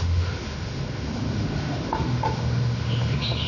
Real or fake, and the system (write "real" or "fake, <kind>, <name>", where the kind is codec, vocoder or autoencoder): fake, autoencoder, DAC-VAE